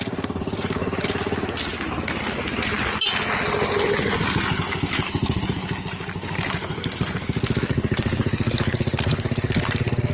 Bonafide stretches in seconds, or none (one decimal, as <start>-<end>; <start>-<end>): 0.0-10.1